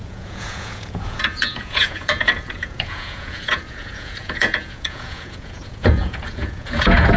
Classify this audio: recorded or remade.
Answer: remade